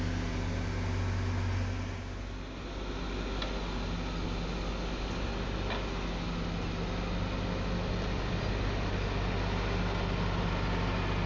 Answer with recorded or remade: recorded